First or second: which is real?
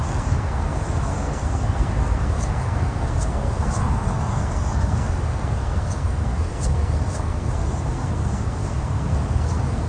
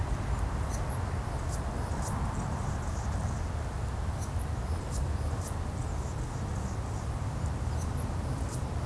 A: second